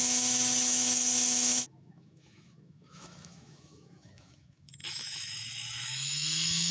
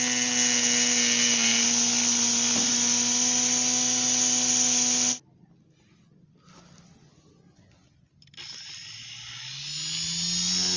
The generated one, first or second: first